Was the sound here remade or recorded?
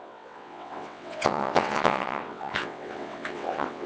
remade